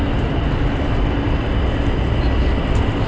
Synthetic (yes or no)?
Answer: no